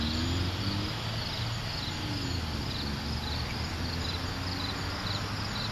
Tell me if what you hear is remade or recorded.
recorded